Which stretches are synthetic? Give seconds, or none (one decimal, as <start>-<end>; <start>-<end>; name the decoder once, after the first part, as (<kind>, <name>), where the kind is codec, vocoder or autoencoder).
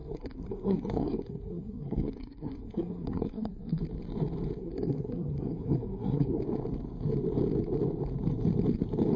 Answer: 0.0-3.8 (codec, SNAC); 4.6-6.4